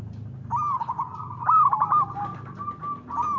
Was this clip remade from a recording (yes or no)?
no